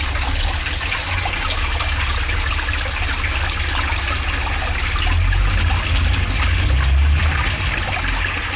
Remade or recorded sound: recorded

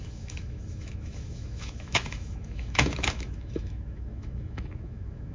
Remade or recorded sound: remade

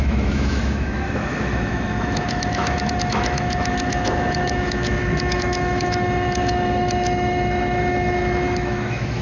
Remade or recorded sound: remade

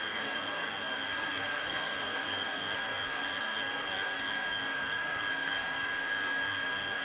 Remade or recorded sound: remade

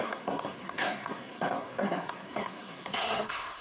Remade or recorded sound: remade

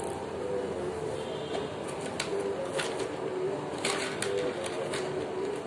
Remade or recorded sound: recorded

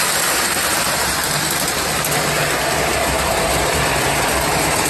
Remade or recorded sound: recorded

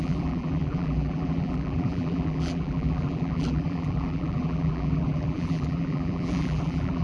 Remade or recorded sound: remade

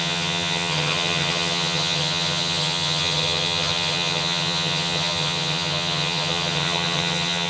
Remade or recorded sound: remade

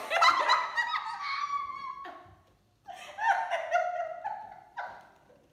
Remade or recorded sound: recorded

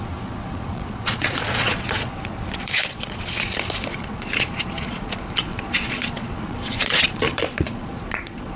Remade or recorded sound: remade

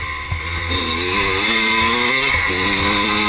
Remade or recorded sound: recorded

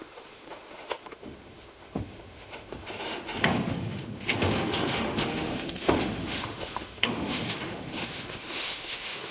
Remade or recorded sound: remade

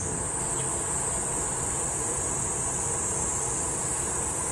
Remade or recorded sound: recorded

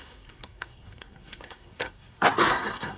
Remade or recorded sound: remade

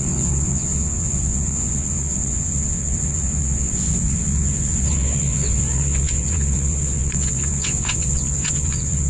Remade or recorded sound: remade